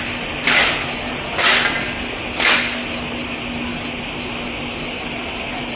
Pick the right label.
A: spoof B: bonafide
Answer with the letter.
B